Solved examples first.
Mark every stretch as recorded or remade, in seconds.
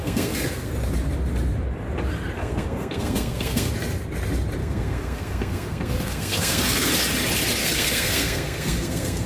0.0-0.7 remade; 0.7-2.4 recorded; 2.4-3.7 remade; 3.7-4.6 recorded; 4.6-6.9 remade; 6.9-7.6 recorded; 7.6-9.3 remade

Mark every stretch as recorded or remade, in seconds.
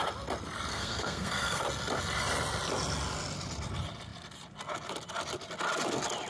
0.0-0.7 recorded; 0.7-1.6 remade; 1.6-6.3 recorded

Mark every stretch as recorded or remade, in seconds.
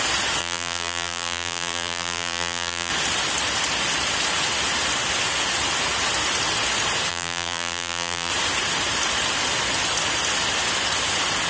0.0-0.4 recorded; 0.4-2.9 remade; 2.9-7.1 recorded; 7.1-8.3 remade; 8.3-11.5 recorded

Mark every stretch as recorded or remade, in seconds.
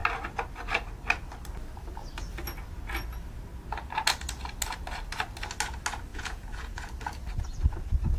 0.0-6.1 recorded; 6.1-6.8 remade; 6.8-8.2 recorded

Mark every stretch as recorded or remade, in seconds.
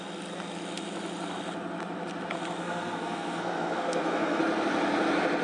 0.0-2.6 recorded; 2.6-4.4 remade; 4.4-5.4 recorded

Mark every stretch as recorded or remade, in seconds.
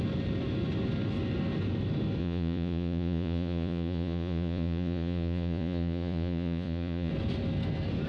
0.0-2.2 recorded; 2.2-7.1 remade; 7.1-8.1 recorded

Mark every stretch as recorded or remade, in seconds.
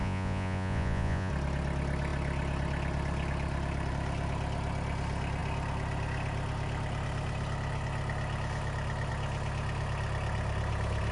0.0-1.3 remade; 1.3-11.1 recorded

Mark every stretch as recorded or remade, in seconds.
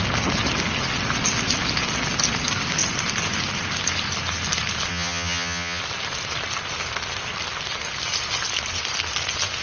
0.0-4.9 recorded; 4.9-5.8 remade; 5.8-9.6 recorded